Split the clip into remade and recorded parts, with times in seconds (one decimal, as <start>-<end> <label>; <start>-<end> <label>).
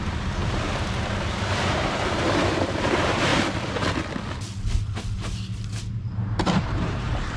0.0-3.3 remade; 3.3-5.9 recorded; 5.9-7.4 remade